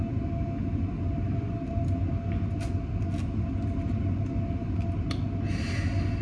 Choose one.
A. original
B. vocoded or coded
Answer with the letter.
A